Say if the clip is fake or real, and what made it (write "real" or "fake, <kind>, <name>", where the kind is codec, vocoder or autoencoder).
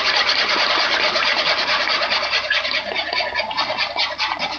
real